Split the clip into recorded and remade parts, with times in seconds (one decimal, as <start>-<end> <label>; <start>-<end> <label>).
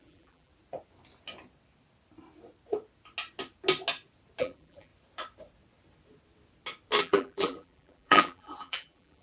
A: 0.0-0.5 remade; 0.5-4.4 recorded; 4.4-4.9 remade; 4.9-7.0 recorded; 7.0-9.2 remade